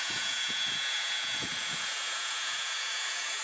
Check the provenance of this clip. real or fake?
fake